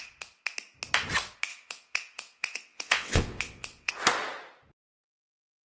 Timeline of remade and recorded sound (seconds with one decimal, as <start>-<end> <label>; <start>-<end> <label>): 0.0-1.5 recorded; 1.5-3.9 remade; 3.9-5.6 recorded